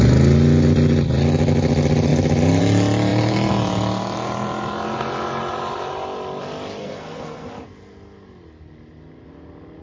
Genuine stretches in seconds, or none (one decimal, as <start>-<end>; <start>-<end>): 0.0-6.8; 7.5-9.8